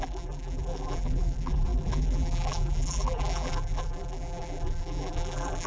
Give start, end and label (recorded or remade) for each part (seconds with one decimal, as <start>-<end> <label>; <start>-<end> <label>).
0.0-5.7 remade